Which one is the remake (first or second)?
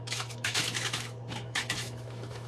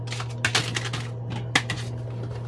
first